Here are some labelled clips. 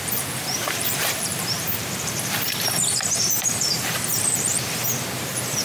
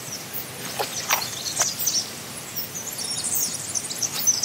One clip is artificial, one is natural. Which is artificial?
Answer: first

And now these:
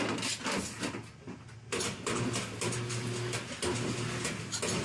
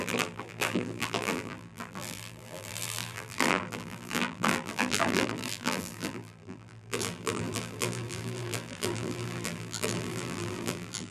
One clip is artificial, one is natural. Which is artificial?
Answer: second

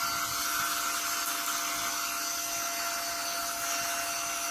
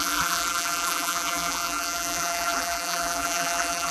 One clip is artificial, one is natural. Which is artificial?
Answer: second